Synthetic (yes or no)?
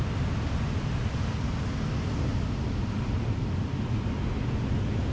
no